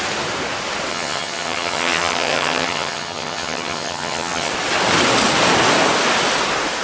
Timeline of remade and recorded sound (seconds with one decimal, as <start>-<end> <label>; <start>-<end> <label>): 0.0-0.9 recorded; 0.9-4.5 remade; 4.5-6.8 recorded